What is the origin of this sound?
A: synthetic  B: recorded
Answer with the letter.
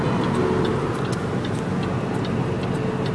B